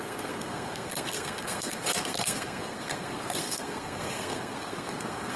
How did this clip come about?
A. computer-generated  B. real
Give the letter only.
A